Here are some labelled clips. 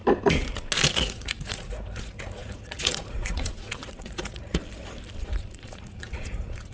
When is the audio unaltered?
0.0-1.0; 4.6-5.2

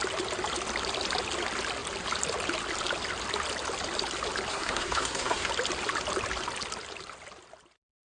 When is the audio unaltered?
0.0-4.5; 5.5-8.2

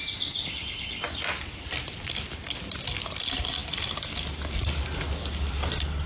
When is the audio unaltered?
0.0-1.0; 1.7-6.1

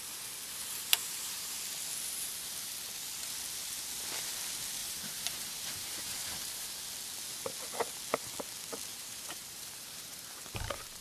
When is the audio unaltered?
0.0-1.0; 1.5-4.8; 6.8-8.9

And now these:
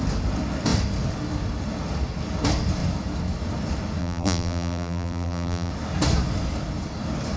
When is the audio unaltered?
0.0-4.0; 5.7-7.4